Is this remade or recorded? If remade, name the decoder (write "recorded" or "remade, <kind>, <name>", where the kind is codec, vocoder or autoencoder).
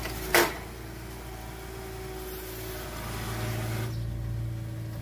recorded